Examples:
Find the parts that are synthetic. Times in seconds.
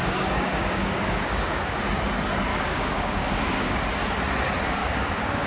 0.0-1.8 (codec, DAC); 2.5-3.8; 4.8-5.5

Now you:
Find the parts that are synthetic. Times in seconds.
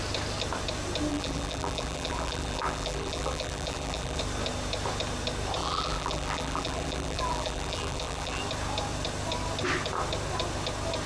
1.1-4.2 (vocoder, BigVGAN v2); 5.6-8.4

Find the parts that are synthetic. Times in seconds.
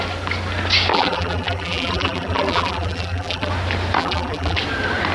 0.9-3.5 (vocoder, BigVGAN v2); 4.0-4.6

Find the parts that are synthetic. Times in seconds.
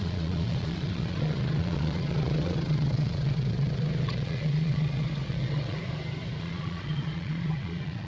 0.0-5.8 (vocoder, Vocos); 6.4-8.1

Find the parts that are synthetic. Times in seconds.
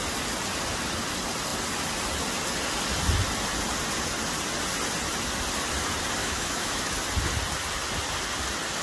6.2-6.9 (autoencoder, DAC-VAE)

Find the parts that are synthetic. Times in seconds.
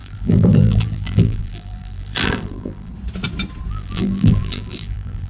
0.0-2.9 (vocoder, BigVGAN v2); 3.7-5.3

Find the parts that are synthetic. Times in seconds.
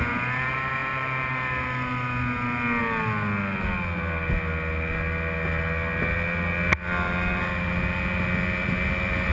none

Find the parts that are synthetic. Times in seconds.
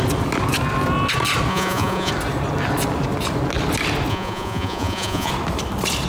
1.5-2.1 (vocoder, Vocos); 4.1-5.3